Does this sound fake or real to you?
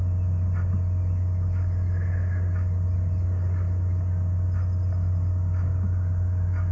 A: real